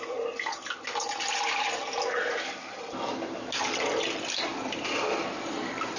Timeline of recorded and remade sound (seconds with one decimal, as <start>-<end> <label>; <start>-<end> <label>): 0.0-6.0 recorded